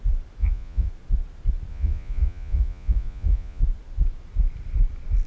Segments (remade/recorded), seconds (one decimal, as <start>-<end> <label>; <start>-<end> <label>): 0.0-0.4 recorded; 0.4-0.9 remade; 0.9-1.7 recorded; 1.7-3.6 remade; 3.6-5.3 recorded